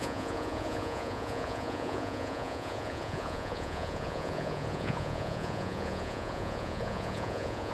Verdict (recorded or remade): remade